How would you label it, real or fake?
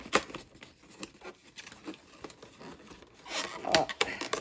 real